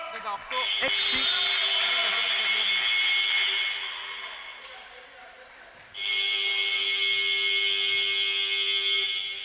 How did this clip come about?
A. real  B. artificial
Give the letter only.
A